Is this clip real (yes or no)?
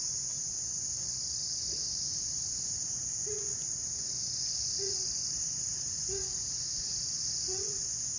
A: no